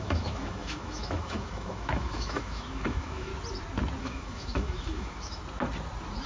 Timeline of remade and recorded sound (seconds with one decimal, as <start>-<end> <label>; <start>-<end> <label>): 0.0-3.3 remade; 3.3-4.0 recorded; 4.0-5.4 remade; 5.4-6.3 recorded